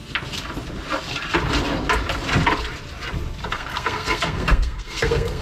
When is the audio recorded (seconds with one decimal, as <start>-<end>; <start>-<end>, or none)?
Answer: 0.0-3.4